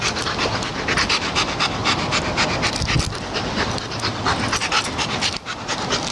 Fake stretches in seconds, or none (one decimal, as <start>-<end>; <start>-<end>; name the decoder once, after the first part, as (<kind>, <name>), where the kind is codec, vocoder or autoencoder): none